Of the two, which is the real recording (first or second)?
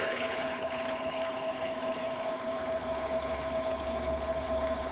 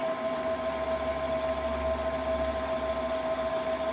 second